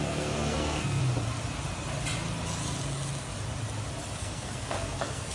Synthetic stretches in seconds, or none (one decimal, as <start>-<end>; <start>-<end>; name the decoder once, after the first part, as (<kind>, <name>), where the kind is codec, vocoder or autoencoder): 0.0-1.0 (codec, SNAC); 4.2-5.3